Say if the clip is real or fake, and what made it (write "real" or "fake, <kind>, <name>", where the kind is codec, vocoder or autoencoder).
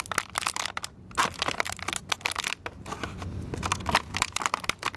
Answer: real